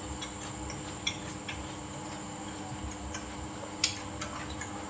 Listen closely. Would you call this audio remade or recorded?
recorded